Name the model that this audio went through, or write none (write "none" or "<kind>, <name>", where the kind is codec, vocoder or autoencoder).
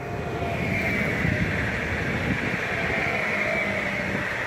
none